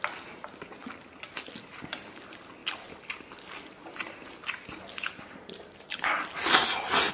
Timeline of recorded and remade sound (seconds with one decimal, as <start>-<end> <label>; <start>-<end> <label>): 0.0-7.1 recorded